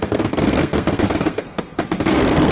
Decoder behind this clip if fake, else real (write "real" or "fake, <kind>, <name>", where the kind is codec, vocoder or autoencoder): fake, codec, SNAC